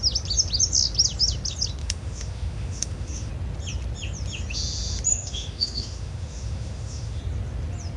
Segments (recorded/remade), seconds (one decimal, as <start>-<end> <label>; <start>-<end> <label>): 0.0-1.8 recorded; 1.8-3.3 remade; 3.3-5.1 recorded; 5.1-7.2 remade; 7.2-8.0 recorded